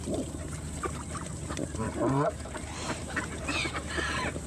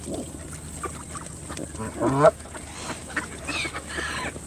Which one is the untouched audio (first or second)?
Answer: second